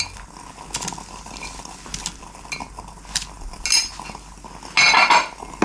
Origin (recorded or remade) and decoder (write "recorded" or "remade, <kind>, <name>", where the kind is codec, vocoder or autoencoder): recorded